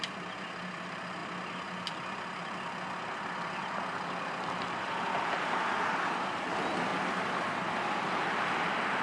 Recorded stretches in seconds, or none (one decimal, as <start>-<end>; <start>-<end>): 0.0-9.0